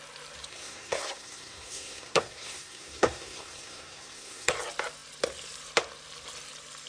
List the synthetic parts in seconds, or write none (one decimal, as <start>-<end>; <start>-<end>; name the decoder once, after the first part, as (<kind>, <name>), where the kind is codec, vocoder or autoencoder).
0.5-4.5 (codec, SNAC)